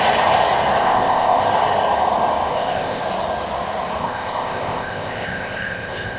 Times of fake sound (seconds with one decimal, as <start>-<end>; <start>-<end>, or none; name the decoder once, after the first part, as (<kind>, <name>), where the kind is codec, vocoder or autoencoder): 0.8-1.4 (codec, ZipCodec); 2.5-3.0; 4.0-6.2

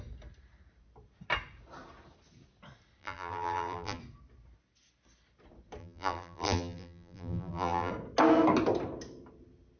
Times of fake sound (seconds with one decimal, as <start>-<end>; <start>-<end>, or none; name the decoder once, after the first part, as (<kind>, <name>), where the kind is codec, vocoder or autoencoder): 3.0-4.0 (vocoder, BigVGAN v2); 5.8-7.9